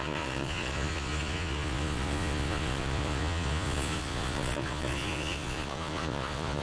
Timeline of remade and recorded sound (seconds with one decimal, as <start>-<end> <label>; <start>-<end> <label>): 0.0-6.6 remade